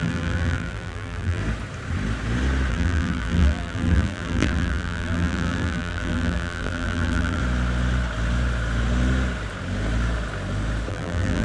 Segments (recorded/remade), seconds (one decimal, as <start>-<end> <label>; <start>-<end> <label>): 0.0-1.4 remade; 1.4-2.7 recorded; 2.7-7.4 remade; 7.4-10.9 recorded; 10.9-11.4 remade